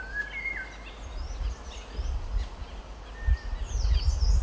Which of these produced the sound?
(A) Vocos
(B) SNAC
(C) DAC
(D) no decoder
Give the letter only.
D